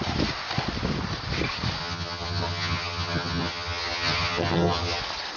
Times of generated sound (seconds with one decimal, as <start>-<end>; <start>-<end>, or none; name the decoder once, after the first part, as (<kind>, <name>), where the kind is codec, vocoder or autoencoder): 1.8-5.0 (vocoder, HiFi-GAN)